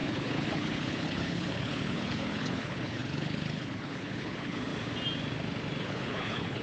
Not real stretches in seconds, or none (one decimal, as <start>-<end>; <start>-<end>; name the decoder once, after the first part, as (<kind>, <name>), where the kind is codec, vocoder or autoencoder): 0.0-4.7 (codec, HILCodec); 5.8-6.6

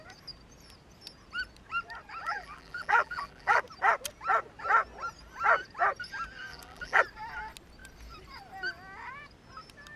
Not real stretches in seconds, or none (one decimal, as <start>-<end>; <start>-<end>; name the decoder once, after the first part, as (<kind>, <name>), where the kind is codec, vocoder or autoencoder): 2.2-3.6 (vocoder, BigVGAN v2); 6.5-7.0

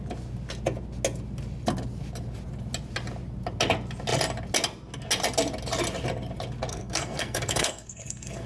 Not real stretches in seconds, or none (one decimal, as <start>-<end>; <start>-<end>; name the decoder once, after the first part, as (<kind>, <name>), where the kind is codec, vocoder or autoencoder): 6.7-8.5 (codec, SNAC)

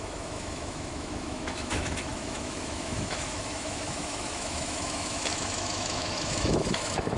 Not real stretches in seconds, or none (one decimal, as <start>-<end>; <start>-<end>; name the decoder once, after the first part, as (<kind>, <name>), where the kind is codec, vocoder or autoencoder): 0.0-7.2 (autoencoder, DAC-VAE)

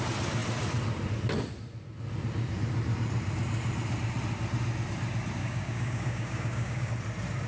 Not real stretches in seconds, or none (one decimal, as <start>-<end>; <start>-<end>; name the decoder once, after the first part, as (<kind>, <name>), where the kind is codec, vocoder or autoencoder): 5.4-6.9 (codec, DAC)